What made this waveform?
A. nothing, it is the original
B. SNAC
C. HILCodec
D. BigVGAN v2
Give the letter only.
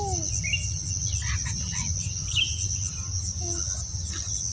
A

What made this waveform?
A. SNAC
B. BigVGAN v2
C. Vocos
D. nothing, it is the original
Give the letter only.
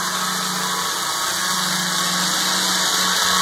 D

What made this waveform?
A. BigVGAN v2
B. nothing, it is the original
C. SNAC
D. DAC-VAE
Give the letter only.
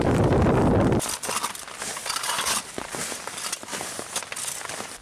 B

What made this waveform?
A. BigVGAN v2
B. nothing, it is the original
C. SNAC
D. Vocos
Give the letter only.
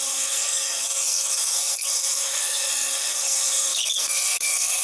C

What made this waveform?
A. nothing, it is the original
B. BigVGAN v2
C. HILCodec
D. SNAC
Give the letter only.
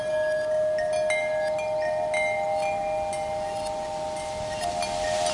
A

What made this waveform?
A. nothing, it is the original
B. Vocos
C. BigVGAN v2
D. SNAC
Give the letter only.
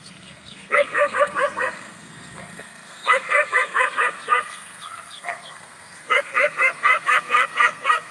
D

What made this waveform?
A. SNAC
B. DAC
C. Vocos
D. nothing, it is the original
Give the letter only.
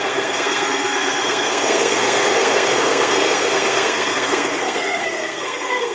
A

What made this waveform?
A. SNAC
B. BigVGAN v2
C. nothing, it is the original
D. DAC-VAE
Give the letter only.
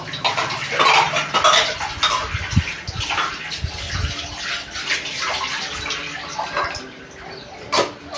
C